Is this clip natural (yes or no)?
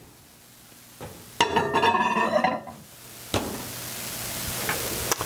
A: yes